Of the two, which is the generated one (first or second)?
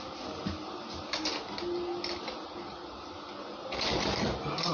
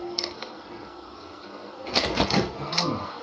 second